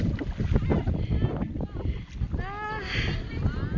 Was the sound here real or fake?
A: real